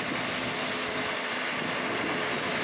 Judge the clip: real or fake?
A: real